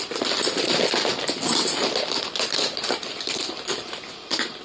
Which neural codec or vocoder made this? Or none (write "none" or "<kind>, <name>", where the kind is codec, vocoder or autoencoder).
none